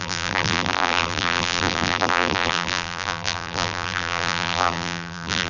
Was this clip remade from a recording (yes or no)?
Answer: yes